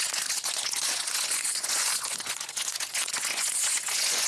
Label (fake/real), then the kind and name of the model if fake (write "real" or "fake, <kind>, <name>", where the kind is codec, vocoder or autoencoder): fake, vocoder, Vocos